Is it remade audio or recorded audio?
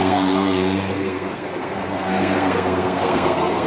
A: remade